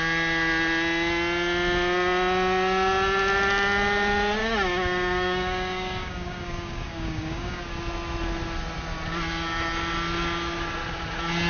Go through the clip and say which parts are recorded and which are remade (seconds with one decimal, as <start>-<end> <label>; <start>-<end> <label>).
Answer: 0.0-4.4 recorded; 4.4-7.6 remade; 7.6-11.5 recorded